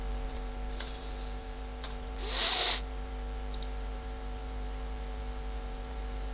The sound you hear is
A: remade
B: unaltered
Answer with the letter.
A